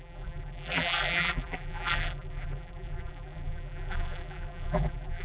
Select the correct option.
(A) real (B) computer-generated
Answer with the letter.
B